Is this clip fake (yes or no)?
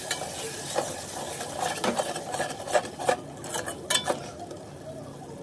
no